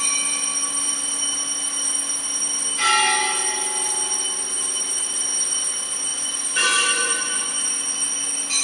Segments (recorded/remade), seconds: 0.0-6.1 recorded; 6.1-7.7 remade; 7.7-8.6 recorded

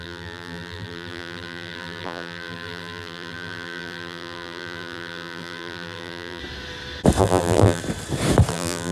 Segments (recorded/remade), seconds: 0.0-6.4 remade; 6.4-7.2 recorded; 7.2-7.8 remade; 7.8-8.5 recorded; 8.5-8.9 remade

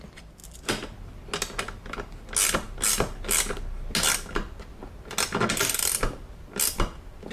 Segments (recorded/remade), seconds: 0.0-7.3 recorded

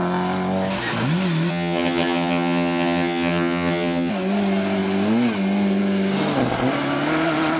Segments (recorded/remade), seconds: 0.0-1.5 recorded; 1.5-4.1 remade; 4.1-7.6 recorded

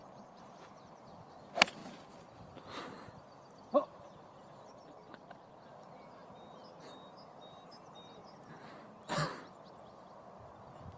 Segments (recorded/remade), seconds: 0.0-0.7 remade; 0.7-11.0 recorded

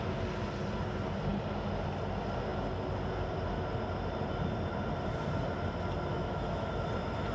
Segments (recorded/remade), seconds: 0.0-6.1 recorded; 6.1-6.7 remade; 6.7-7.3 recorded